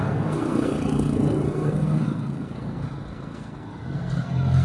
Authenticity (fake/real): fake